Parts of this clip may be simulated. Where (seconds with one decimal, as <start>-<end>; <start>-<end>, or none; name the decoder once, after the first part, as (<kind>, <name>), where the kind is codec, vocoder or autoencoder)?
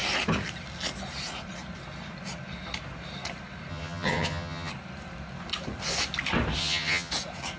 3.7-4.7 (vocoder, HiFi-GAN); 6.6-7.1